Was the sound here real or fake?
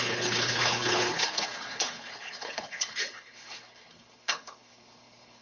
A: fake